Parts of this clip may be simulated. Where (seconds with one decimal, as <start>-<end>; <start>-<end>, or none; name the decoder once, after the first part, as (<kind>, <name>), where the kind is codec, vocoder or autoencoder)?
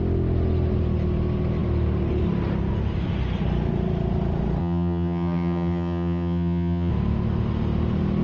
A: 4.6-6.9 (vocoder, HiFi-GAN)